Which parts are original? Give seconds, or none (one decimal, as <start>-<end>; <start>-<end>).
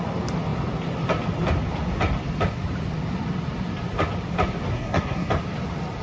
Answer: 0.0-4.7; 5.3-6.0